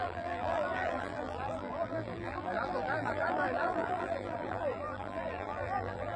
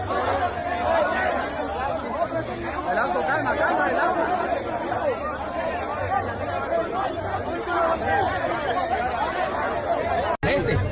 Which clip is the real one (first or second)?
second